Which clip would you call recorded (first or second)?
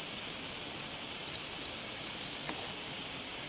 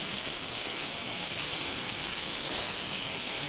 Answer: first